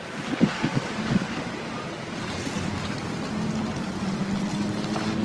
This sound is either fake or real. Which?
real